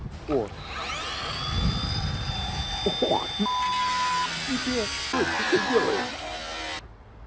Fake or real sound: real